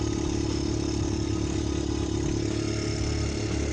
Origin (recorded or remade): recorded